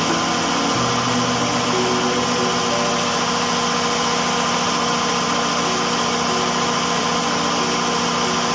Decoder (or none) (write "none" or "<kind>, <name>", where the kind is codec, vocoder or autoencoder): none